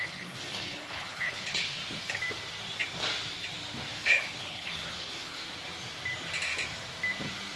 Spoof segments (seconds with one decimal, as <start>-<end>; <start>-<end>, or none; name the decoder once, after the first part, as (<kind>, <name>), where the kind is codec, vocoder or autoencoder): 0.0-1.8 (codec, HILCodec); 3.9-5.4